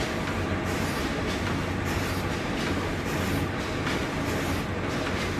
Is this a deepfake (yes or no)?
no